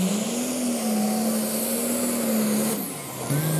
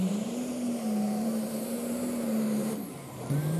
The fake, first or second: second